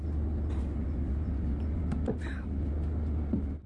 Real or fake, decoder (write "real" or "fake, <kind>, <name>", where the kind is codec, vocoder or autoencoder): real